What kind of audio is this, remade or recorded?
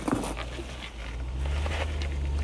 recorded